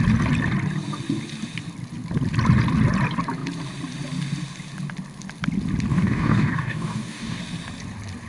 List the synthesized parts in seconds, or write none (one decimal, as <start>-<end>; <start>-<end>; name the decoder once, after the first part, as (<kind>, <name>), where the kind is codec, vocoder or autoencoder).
5.9-7.4 (codec, DAC)